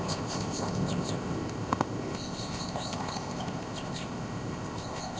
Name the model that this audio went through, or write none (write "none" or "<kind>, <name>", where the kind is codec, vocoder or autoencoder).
codec, ZipCodec